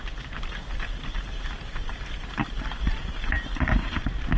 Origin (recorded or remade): recorded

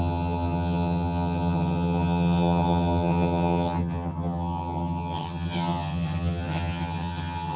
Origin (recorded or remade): remade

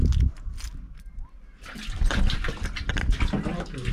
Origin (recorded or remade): recorded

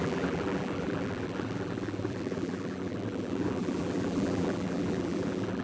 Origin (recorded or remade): remade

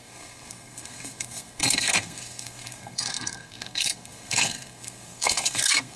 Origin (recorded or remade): remade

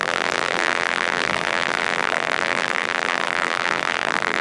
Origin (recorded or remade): remade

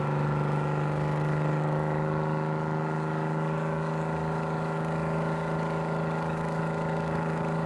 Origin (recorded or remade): remade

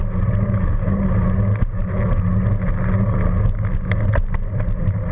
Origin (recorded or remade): recorded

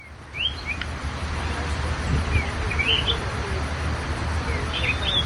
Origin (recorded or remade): recorded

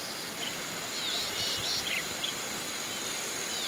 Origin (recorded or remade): remade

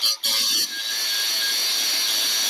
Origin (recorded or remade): recorded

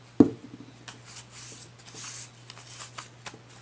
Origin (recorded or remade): recorded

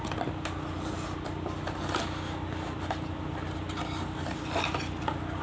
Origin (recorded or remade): recorded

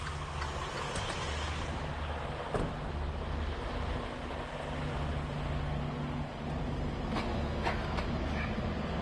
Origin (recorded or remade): recorded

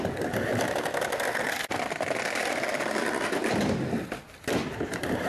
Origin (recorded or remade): remade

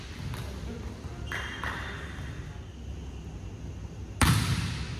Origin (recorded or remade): recorded